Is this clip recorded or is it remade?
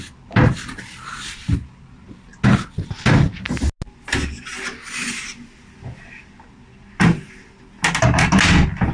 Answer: recorded